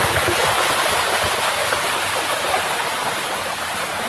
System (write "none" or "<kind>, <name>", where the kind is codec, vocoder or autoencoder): none